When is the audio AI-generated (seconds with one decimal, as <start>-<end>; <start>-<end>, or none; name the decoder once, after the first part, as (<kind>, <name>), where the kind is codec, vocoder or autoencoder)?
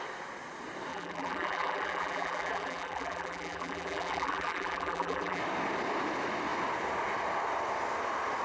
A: 0.9-5.4 (vocoder, BigVGAN v2)